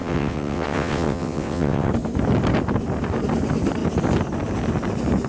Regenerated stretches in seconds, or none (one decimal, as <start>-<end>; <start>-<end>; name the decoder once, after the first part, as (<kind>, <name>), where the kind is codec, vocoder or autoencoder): 0.0-1.9 (vocoder, WaveNeXt)